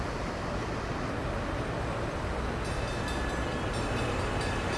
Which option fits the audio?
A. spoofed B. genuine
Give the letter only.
B